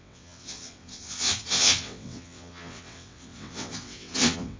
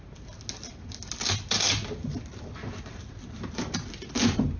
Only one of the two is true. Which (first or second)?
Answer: second